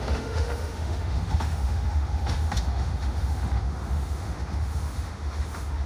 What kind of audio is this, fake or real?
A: fake